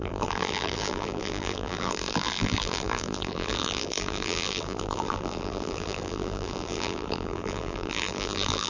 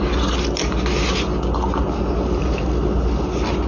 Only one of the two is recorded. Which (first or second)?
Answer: second